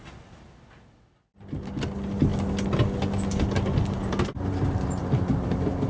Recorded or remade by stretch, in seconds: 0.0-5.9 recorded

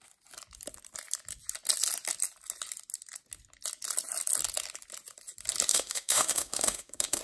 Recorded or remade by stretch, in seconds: 0.0-5.7 recorded; 5.7-7.2 remade

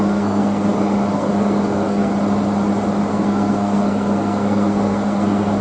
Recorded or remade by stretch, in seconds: 0.0-2.1 remade; 2.1-3.1 recorded; 3.1-5.6 remade

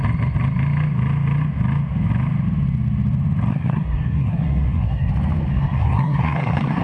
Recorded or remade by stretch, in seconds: 0.0-3.5 recorded; 3.5-5.1 remade; 5.1-5.5 recorded; 5.5-6.8 remade

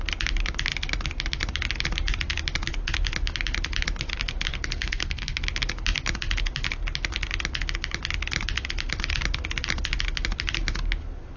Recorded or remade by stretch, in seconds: 0.0-4.5 recorded; 4.5-5.4 remade; 5.4-11.4 recorded

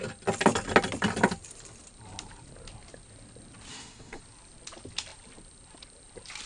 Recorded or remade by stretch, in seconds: 0.0-3.7 recorded; 3.7-4.2 remade; 4.2-6.5 recorded